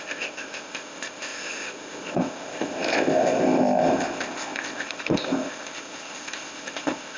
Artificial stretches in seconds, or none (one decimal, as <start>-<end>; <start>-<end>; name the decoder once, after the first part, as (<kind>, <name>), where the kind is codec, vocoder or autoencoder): 0.0-7.2 (codec, ZipCodec)